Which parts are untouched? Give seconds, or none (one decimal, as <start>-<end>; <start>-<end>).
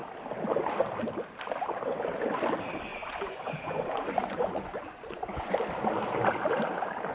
0.0-2.9; 5.5-7.1